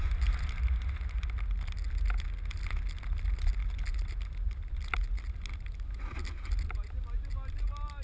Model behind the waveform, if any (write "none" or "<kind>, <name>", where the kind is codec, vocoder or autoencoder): none